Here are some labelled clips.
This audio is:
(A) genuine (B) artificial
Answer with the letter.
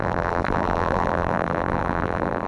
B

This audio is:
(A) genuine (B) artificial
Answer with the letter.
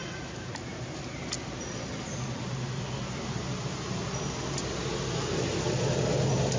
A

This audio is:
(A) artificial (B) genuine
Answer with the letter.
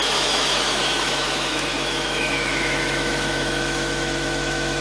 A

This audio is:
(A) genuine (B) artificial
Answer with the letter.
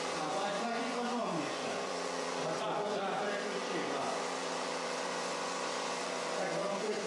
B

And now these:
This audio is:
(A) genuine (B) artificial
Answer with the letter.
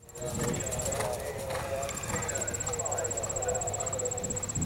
A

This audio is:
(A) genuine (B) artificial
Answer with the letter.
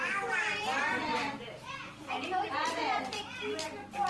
B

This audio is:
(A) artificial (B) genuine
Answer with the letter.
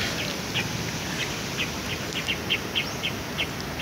B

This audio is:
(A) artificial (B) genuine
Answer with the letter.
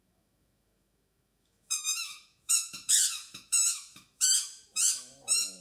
A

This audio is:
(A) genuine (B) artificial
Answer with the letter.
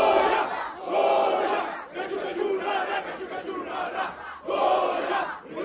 B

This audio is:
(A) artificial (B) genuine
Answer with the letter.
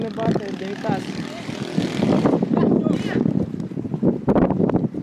A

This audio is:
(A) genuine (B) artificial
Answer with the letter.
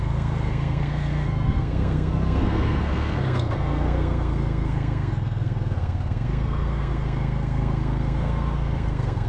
B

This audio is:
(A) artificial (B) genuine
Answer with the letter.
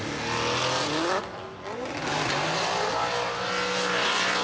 B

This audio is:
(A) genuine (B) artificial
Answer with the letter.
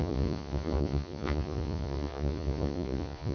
B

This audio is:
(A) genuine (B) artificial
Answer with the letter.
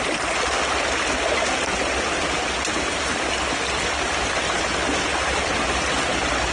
A